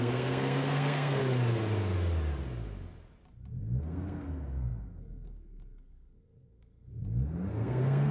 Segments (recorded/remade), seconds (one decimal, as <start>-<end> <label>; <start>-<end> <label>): 0.0-1.2 remade; 1.2-3.8 recorded; 3.8-7.0 remade; 7.0-7.5 recorded; 7.5-8.1 remade